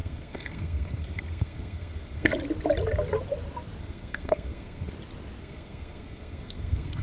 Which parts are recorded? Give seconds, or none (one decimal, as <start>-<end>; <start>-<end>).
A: 2.3-3.8; 4.9-5.4